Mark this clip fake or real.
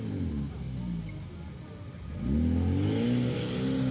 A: real